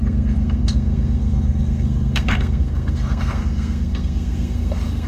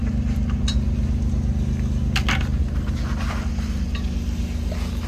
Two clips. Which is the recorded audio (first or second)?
second